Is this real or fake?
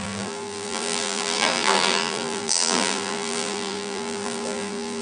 fake